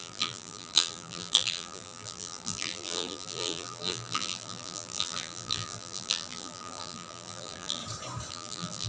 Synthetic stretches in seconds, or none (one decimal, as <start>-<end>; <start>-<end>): 0.0-7.8; 8.3-8.9